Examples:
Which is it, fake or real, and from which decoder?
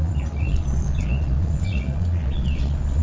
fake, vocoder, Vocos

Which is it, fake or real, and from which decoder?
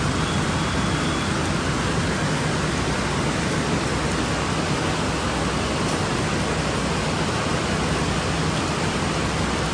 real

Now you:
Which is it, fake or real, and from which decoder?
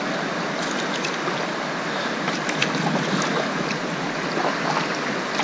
real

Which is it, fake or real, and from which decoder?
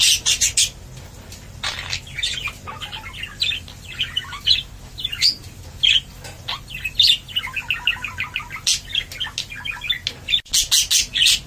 real